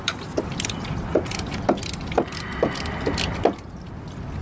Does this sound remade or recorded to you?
recorded